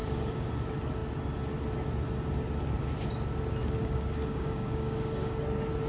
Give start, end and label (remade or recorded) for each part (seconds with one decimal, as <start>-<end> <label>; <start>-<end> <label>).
0.0-0.5 remade; 0.5-3.6 recorded; 3.6-5.4 remade; 5.4-5.9 recorded